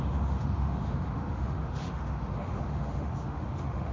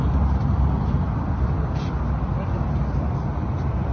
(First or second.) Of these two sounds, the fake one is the first